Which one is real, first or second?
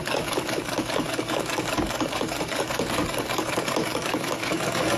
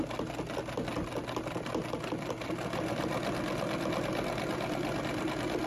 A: second